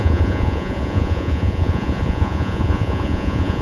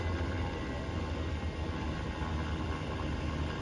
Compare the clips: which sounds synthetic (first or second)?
first